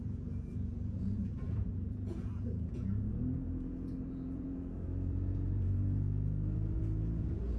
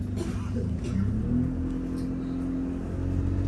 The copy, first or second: first